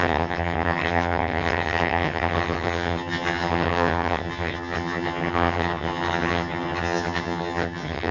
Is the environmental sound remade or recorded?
remade